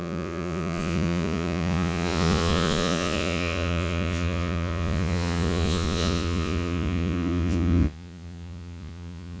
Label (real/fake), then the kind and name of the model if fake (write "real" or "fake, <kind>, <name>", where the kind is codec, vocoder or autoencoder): fake, vocoder, Vocos